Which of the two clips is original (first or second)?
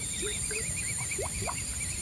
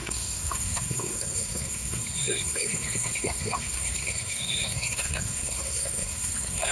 first